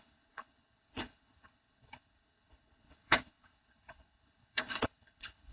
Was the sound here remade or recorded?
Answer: remade